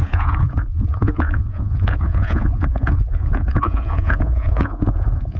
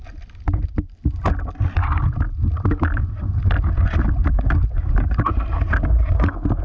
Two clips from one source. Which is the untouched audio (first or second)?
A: second